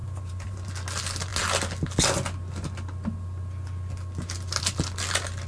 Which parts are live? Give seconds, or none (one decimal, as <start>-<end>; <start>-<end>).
0.7-5.5